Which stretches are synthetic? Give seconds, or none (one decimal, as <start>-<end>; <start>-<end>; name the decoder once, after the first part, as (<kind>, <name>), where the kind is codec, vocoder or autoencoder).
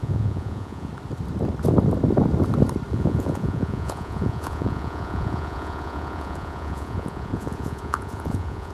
0.0-0.9 (vocoder, Vocos); 2.9-8.7